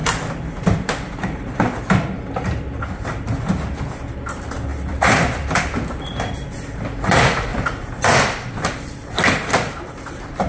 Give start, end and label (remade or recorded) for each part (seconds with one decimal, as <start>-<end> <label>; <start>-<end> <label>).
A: 0.0-4.7 recorded; 4.7-6.1 remade; 6.1-7.5 recorded; 7.5-10.5 remade